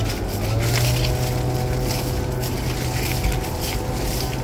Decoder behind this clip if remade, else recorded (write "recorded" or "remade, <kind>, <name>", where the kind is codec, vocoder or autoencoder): recorded